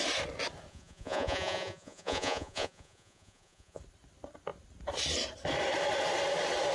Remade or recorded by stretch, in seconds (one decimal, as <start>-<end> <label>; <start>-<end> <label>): 0.0-0.7 recorded; 0.7-3.8 remade; 3.8-6.7 recorded